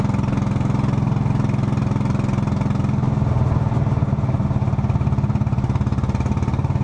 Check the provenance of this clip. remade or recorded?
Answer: recorded